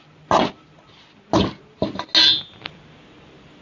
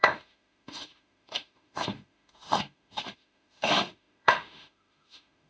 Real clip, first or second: first